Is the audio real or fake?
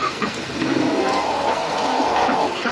fake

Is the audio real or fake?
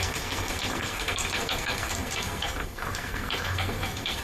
fake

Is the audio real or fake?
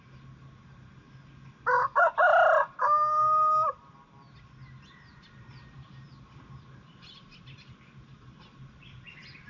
real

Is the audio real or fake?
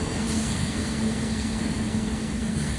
fake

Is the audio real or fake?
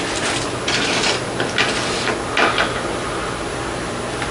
real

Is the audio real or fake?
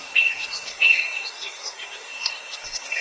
fake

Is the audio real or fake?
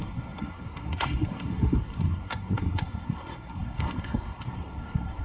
fake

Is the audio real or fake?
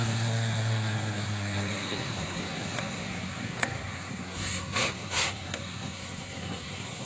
fake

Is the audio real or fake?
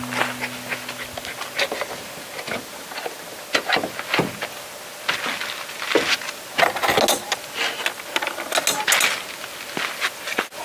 real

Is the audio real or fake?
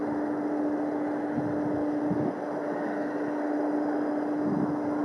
real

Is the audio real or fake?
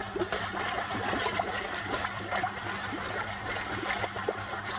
real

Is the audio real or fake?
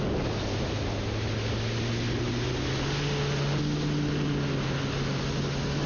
real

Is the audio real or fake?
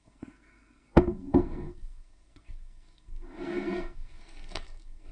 fake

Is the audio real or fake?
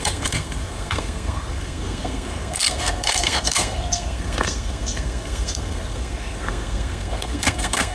fake